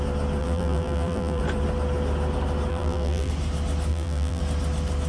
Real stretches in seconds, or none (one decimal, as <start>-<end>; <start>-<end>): 0.0-0.4; 1.4-2.7; 3.3-3.9; 4.4-5.1